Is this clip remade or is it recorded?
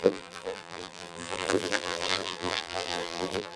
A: remade